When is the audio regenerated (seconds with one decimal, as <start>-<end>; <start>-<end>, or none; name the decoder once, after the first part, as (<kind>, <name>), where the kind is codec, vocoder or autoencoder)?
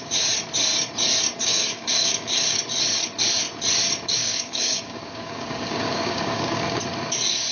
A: 1.4-2.6 (codec, DAC); 4.2-6.8